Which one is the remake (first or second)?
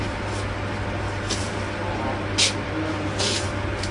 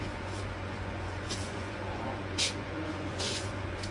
second